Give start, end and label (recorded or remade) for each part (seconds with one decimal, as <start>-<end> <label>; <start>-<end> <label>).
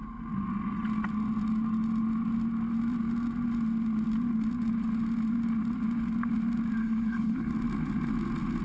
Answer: 0.0-6.8 recorded; 6.8-7.5 remade; 7.5-8.6 recorded